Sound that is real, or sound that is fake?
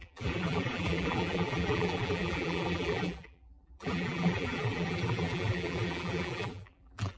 fake